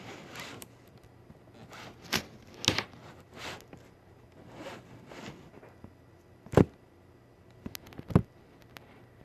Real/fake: real